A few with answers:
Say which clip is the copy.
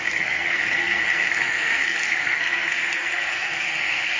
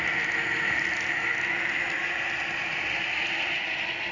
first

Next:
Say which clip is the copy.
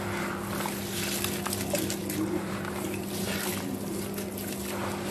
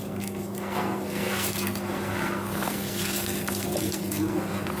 second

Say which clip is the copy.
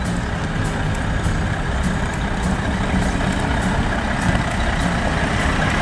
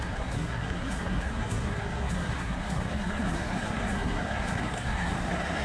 second